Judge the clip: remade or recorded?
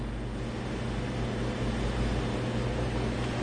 recorded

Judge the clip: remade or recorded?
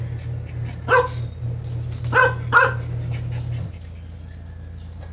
recorded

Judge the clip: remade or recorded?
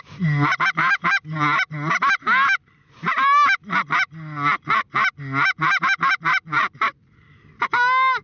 recorded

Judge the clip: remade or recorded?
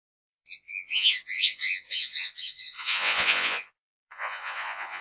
remade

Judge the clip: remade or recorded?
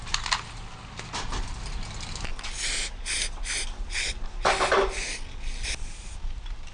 recorded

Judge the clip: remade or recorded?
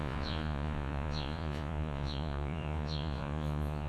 remade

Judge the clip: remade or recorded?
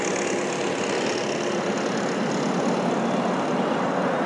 recorded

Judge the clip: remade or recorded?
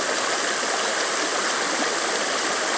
recorded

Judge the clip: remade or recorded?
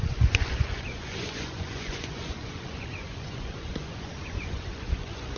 remade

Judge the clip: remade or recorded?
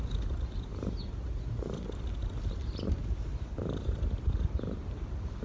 recorded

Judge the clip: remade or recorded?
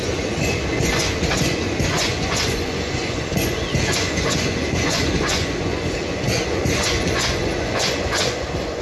remade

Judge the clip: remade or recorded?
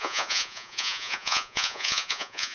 remade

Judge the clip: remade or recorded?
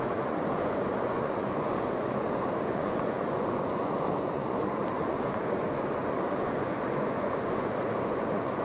remade